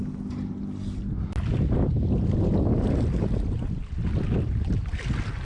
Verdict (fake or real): real